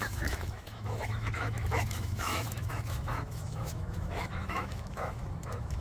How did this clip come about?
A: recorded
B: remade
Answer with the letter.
B